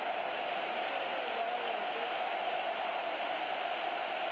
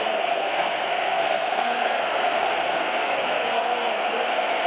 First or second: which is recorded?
first